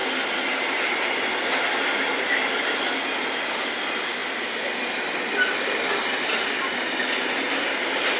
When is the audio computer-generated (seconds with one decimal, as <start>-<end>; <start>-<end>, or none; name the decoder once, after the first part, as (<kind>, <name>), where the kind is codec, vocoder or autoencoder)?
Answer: none

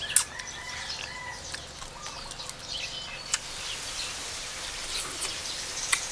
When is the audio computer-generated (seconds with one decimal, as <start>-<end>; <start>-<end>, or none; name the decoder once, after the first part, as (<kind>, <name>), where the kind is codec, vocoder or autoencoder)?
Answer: 5.4-6.1 (vocoder, BigVGAN v2)

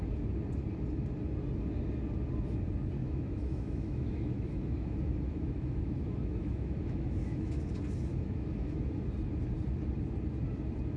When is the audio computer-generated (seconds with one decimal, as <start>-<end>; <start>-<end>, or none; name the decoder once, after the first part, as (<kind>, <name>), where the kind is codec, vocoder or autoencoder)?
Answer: 3.0-7.7 (autoencoder, DAC-VAE); 8.1-8.8

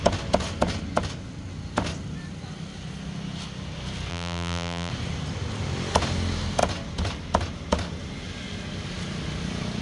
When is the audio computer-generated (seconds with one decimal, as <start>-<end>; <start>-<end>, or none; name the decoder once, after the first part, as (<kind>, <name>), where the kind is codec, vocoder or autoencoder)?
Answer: 4.1-4.9 (vocoder, BigVGAN v2)

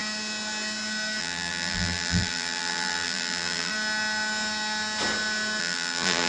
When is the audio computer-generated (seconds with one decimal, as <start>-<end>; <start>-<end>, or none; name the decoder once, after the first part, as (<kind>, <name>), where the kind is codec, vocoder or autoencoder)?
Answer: 1.2-3.7 (vocoder, BigVGAN v2); 5.6-6.3

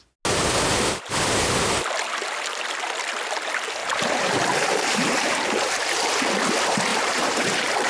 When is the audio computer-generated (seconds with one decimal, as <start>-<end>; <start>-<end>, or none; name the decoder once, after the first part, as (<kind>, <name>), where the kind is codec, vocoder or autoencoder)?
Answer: 3.8-5.8 (vocoder, BigVGAN v2); 6.9-7.9

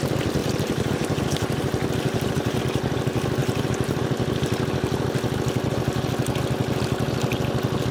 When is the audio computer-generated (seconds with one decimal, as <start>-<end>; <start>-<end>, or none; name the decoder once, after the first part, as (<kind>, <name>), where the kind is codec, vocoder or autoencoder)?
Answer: 0.4-2.6 (vocoder, BigVGAN v2); 3.4-4.1

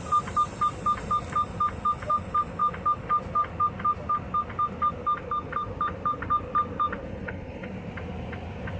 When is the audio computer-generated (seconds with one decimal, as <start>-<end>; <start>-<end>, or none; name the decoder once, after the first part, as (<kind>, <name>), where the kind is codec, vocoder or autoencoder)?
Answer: 7.0-7.7 (codec, HILCodec)